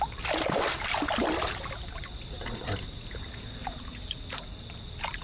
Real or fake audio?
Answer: real